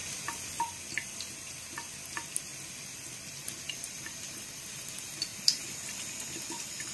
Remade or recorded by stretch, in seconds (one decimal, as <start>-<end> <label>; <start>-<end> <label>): 0.0-5.3 recorded; 5.3-6.0 remade; 6.0-6.9 recorded